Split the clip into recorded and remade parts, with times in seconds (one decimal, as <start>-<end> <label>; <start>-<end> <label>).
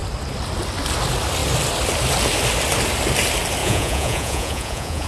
0.0-3.6 recorded; 3.6-5.1 remade